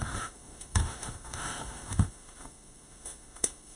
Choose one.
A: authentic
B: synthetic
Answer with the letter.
B